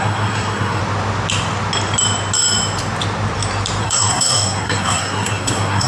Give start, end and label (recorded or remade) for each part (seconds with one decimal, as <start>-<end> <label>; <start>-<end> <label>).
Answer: 0.0-0.8 remade; 0.8-3.8 recorded; 3.8-5.9 remade

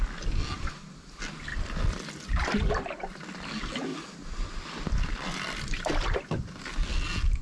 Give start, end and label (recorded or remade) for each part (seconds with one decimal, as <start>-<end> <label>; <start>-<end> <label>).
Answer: 0.0-1.5 recorded; 1.5-2.7 remade; 2.7-3.9 recorded; 3.9-6.6 remade; 6.6-7.4 recorded

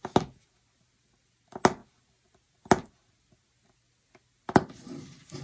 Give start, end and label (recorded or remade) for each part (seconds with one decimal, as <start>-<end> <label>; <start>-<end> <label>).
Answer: 0.0-5.4 recorded

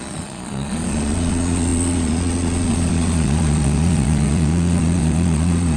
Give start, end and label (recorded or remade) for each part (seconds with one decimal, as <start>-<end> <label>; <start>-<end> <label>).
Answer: 0.0-5.8 remade